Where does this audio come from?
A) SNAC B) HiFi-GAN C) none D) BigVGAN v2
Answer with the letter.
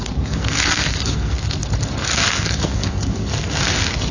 A